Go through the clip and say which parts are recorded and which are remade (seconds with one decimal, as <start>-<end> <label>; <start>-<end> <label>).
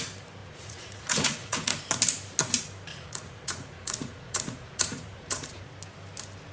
0.0-0.4 recorded; 0.4-1.8 remade; 1.8-2.9 recorded; 2.9-5.7 remade; 5.7-6.5 recorded